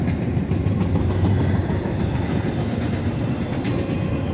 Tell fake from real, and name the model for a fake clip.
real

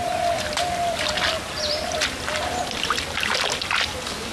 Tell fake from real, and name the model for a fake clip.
real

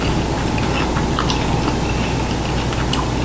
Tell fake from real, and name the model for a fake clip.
real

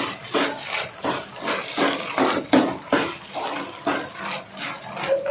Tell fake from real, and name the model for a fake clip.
fake, vocoder, BigVGAN v2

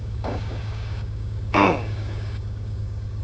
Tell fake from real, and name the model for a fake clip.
fake, codec, DAC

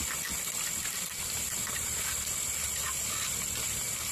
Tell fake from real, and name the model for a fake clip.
real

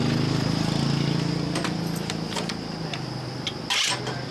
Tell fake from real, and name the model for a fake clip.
real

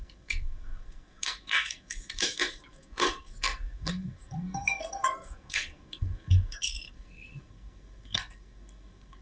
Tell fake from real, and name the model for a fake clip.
fake, codec, SNAC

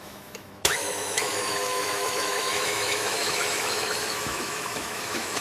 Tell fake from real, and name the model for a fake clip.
fake, autoencoder, DAC-VAE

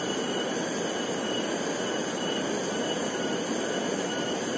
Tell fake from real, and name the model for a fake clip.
real